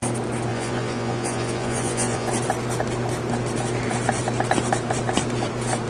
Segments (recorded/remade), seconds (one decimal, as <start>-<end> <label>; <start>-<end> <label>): 0.0-0.5 recorded; 0.5-2.3 remade; 2.3-5.9 recorded